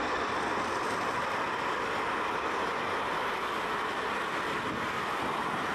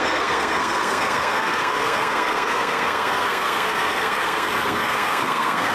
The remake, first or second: second